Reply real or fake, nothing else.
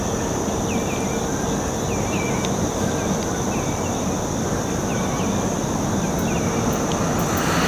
real